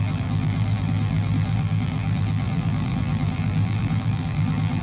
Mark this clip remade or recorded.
remade